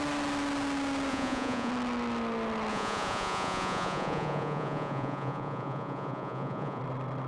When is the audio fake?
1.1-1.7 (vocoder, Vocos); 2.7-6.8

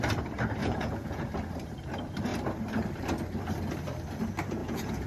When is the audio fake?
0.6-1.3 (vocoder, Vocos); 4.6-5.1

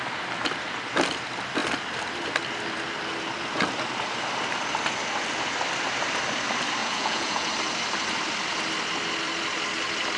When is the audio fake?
6.8-7.5 (vocoder, Vocos)

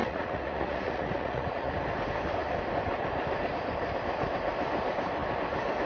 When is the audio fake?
0.0-1.7 (vocoder, Vocos)

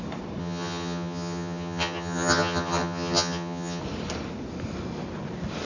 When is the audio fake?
0.4-3.8 (vocoder, HiFi-GAN)

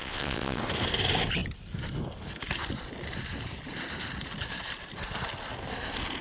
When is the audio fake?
0.0-0.6 (vocoder, WaveNeXt)